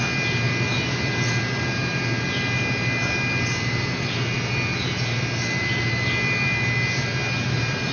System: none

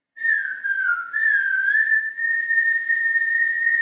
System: vocoder, Vocos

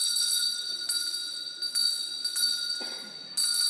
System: none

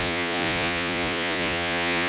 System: vocoder, Vocos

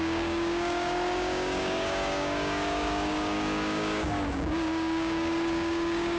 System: codec, DAC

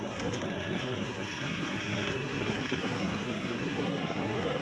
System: codec, SNAC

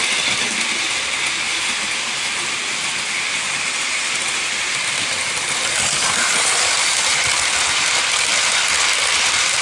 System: none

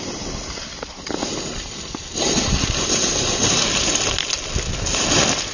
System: none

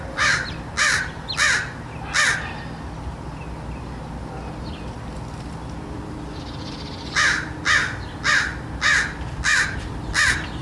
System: none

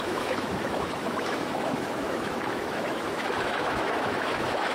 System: autoencoder, DAC-VAE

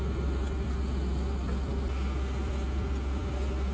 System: none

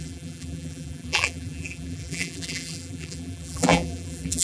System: vocoder, BigVGAN v2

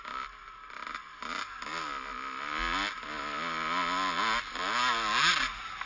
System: none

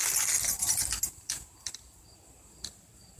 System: none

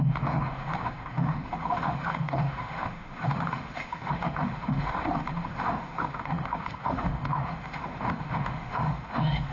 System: autoencoder, DAC-VAE